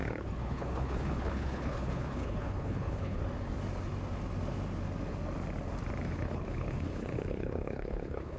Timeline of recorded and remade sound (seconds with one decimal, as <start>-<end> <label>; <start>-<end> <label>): 0.0-3.2 remade; 3.2-6.0 recorded; 6.0-8.4 remade